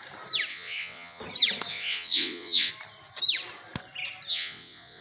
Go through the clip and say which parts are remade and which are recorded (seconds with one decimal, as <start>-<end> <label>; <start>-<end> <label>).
0.0-0.5 recorded; 0.5-1.2 remade; 1.2-1.7 recorded; 1.7-2.7 remade; 2.7-4.3 recorded; 4.3-5.0 remade